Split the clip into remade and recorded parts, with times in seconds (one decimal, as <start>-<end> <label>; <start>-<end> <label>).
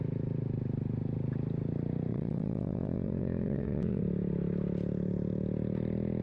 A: 0.0-2.1 recorded; 2.1-4.0 remade; 4.0-6.2 recorded